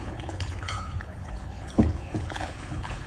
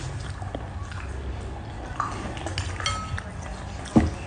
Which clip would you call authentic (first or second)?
second